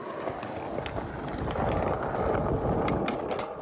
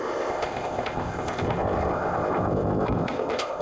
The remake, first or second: second